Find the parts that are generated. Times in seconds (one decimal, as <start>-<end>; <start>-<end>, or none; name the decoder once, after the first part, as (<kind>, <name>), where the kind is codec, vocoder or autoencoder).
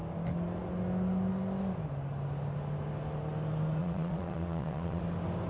3.8-5.0 (vocoder, Vocos)